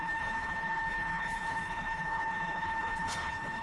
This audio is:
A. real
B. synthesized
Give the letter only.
B